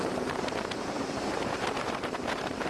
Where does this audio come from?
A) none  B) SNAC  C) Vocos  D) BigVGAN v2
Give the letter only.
D